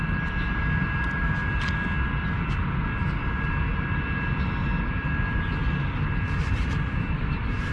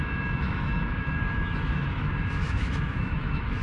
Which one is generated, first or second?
second